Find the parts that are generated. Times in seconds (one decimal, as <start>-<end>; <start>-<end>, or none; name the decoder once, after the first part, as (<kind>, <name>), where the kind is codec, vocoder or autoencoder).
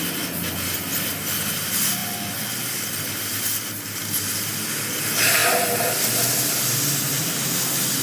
none